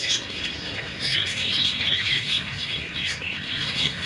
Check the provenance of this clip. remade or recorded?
remade